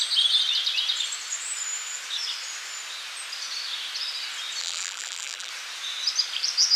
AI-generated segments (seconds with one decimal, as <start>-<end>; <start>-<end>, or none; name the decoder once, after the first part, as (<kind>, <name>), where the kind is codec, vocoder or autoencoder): 4.6-5.5 (vocoder, BigVGAN v2)